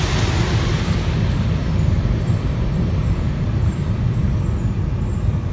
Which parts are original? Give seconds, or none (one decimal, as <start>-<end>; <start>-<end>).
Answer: 0.0-1.6; 4.3-5.5